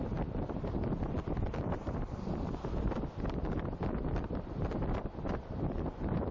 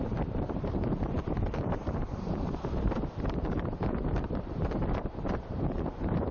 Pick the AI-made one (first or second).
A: second